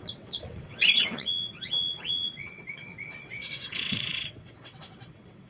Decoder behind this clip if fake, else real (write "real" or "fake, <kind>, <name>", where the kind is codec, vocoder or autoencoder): fake, vocoder, WaveNeXt